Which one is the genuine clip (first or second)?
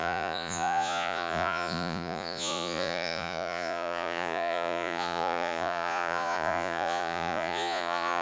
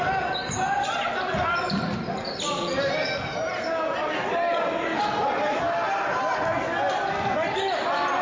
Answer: second